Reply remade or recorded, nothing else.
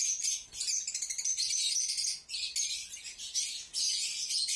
recorded